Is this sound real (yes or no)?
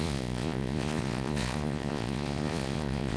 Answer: no